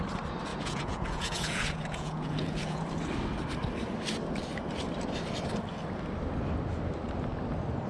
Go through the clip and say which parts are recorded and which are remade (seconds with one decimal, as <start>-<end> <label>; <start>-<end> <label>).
0.0-0.5 recorded; 0.5-2.8 remade; 2.8-7.9 recorded